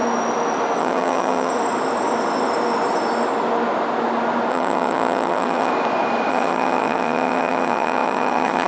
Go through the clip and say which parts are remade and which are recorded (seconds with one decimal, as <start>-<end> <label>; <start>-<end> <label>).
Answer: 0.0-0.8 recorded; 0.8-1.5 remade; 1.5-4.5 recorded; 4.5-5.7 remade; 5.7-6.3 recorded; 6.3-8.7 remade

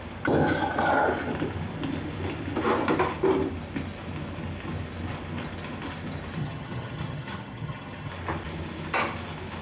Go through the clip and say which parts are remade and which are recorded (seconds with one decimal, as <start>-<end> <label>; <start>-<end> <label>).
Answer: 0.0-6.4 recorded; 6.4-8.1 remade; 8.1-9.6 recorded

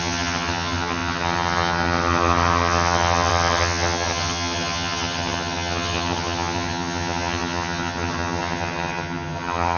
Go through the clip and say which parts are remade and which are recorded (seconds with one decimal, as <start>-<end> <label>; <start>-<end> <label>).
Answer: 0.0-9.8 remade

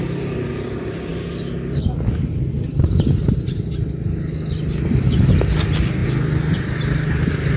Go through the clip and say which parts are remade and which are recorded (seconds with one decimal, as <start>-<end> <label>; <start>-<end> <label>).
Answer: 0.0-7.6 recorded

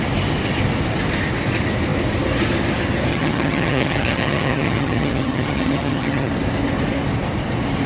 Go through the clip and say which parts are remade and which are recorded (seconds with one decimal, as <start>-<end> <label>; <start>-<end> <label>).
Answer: 0.0-3.1 recorded; 3.1-6.3 remade; 6.3-7.9 recorded

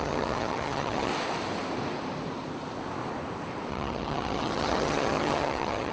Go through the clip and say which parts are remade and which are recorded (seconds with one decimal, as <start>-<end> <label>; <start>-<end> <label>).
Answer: 0.0-1.1 remade; 1.1-3.7 recorded; 3.7-5.9 remade

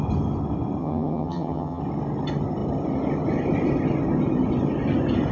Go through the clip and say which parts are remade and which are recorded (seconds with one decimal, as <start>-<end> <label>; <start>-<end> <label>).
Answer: 0.0-0.8 recorded; 0.8-1.8 remade; 1.8-5.3 recorded

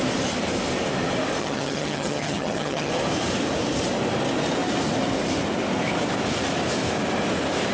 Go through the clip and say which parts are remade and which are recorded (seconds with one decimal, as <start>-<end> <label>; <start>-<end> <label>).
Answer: 0.0-1.4 recorded; 1.4-2.9 remade; 2.9-7.7 recorded